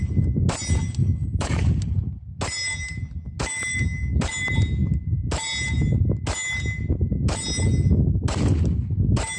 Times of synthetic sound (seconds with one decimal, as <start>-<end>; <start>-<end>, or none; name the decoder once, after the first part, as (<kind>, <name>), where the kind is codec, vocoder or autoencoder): 1.0-1.6 (autoencoder, DAC-VAE)